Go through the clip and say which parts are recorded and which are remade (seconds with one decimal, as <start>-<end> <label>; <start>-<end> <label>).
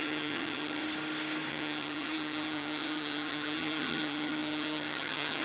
0.0-0.8 remade; 0.8-1.5 recorded; 1.5-5.4 remade